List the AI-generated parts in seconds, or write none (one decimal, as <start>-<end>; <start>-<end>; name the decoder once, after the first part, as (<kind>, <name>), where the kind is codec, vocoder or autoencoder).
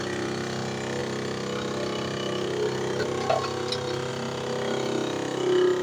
none